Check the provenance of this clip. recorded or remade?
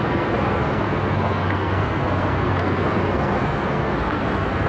remade